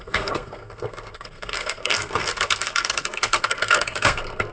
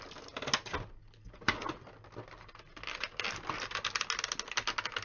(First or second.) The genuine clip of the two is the second